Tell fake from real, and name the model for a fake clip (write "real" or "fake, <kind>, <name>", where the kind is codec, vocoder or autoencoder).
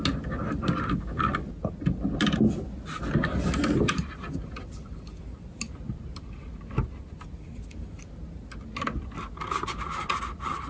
real